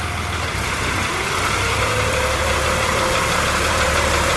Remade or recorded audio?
remade